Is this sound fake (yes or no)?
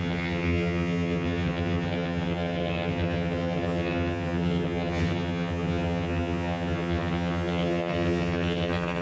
yes